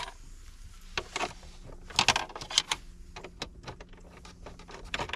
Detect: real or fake real